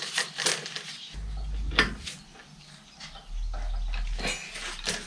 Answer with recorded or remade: recorded